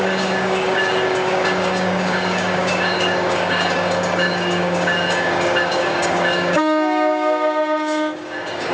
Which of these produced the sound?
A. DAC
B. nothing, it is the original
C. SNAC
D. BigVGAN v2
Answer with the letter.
A